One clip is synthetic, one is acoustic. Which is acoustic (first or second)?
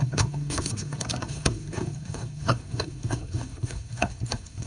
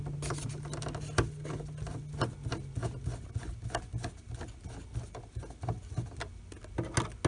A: second